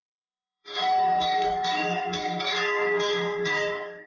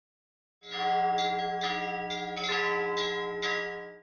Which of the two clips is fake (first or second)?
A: first